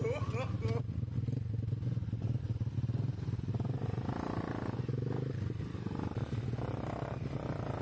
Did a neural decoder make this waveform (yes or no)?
no